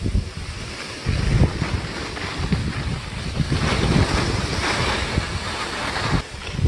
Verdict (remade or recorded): recorded